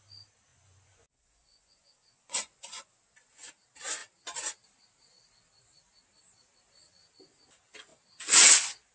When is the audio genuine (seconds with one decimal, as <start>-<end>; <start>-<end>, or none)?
0.0-0.5; 3.5-8.9